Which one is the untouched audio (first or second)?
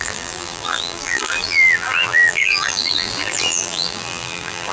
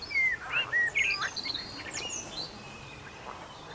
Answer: second